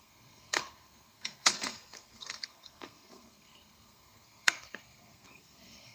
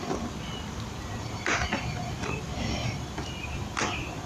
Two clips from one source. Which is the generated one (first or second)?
first